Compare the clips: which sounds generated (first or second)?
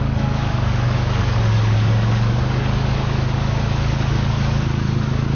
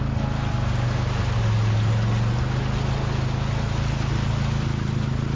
first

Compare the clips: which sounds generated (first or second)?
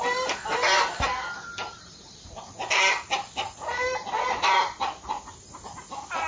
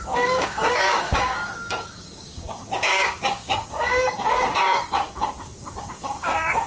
second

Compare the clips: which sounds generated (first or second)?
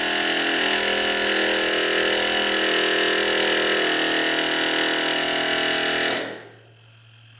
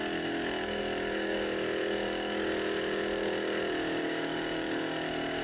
second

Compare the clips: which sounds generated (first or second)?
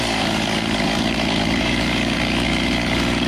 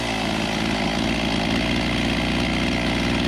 first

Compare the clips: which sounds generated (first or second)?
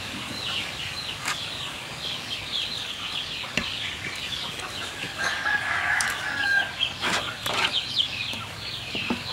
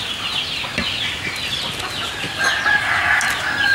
first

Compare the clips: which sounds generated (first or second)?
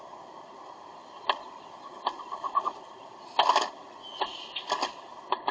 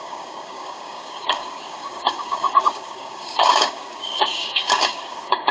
second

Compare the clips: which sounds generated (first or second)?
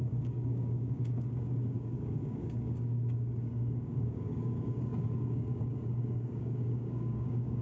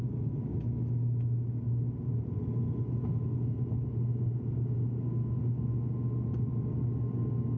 first